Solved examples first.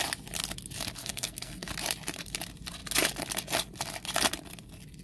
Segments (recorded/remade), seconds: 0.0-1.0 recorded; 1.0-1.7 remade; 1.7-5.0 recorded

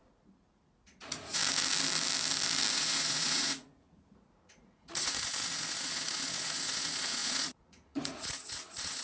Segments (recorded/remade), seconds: 0.0-1.4 remade; 1.4-2.7 recorded; 2.7-9.0 remade

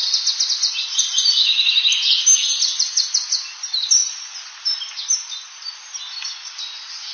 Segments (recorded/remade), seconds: 0.0-7.1 recorded

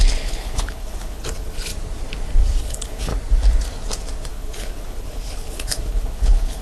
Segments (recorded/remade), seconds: 0.0-1.7 remade; 1.7-2.6 recorded; 2.6-3.1 remade; 3.1-4.3 recorded; 4.3-6.6 remade

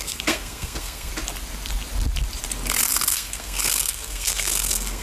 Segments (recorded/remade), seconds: 0.0-1.1 remade; 1.1-3.1 recorded; 3.1-5.0 remade